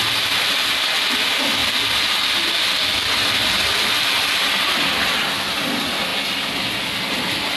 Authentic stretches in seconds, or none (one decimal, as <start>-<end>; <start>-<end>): 0.0-7.6